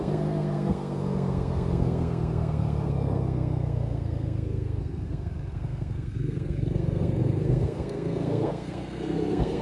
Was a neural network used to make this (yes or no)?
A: yes